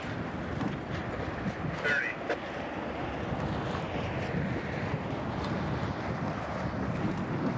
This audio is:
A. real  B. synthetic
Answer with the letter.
A